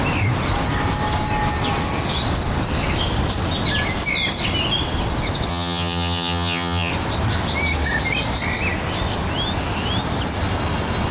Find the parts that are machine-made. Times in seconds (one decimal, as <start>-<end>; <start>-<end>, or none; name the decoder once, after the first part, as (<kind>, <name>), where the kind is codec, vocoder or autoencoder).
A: 5.5-6.9 (vocoder, HiFi-GAN)